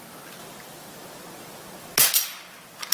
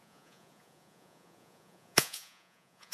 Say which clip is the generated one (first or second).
second